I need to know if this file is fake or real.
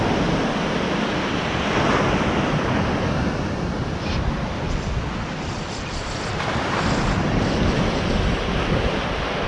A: real